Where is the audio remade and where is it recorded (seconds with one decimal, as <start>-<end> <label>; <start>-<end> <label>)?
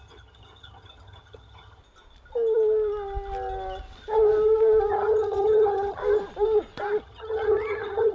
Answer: 0.0-1.8 remade; 1.8-4.9 recorded; 4.9-6.0 remade; 6.0-7.0 recorded; 7.0-8.1 remade